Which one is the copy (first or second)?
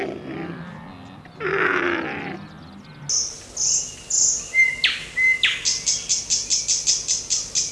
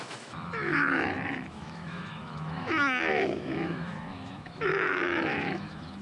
second